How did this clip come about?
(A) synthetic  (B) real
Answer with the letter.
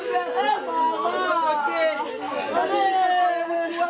B